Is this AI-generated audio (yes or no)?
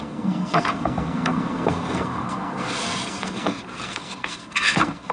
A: yes